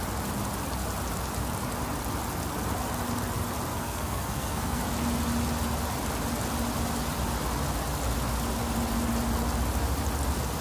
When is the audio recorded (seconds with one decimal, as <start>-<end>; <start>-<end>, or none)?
0.0-3.7; 4.8-10.6

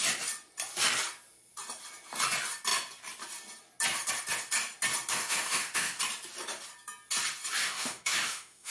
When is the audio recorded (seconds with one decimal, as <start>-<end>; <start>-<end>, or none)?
0.0-5.1; 6.0-7.6

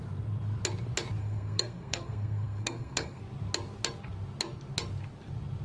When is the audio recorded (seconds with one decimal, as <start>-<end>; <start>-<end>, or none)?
0.0-1.2; 3.2-5.6

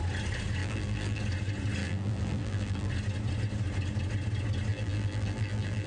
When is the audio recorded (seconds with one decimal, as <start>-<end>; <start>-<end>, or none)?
0.0-0.6; 1.2-1.8; 2.9-4.7

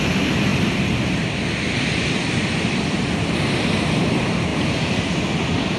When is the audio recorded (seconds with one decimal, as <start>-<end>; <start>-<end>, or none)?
0.0-5.8

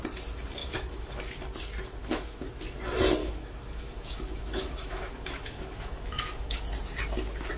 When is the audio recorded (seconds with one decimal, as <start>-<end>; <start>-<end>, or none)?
0.0-0.6; 1.2-2.0; 2.5-3.2; 6.6-7.6

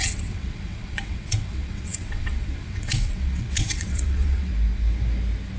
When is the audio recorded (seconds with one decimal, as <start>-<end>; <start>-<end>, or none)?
4.5-5.6